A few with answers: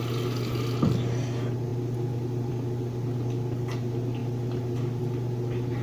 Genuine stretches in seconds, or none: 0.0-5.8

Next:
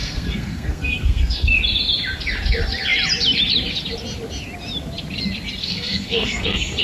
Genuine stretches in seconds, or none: 1.6-5.6

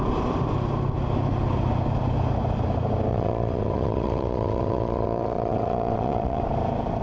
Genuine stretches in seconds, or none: 0.0-3.1; 6.4-7.0

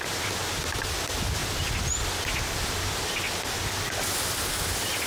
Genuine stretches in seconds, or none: 0.0-0.4; 1.0-5.1

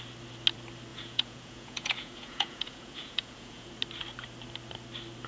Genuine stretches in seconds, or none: 0.0-0.9; 3.7-5.3

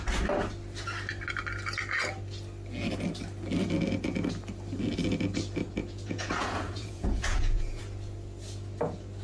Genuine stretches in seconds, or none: 0.0-5.8; 7.8-9.2